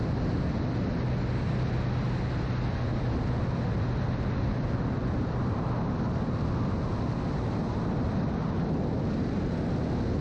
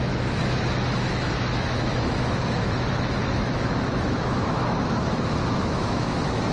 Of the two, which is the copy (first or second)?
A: second